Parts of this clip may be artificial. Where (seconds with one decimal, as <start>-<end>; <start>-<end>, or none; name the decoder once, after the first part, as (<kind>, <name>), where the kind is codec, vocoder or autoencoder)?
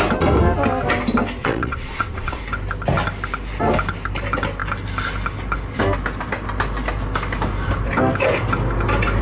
1.4-2.4 (vocoder, Vocos)